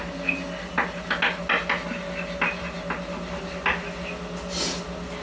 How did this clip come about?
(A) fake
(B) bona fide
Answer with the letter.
B